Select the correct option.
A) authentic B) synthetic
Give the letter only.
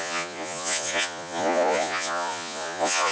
B